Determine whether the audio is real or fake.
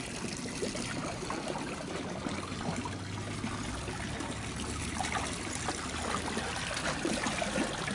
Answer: real